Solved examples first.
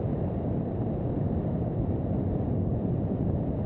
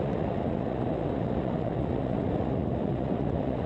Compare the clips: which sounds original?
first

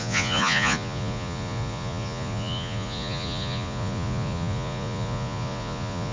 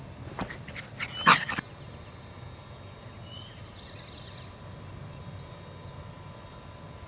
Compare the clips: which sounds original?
second